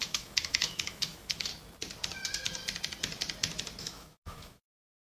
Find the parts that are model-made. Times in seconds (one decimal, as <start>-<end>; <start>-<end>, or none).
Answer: 0.0-1.5; 3.8-5.1